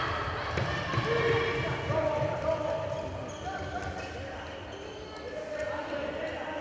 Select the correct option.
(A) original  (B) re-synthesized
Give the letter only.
A